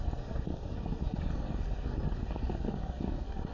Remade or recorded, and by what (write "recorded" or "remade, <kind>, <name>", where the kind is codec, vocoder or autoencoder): remade, codec, SNAC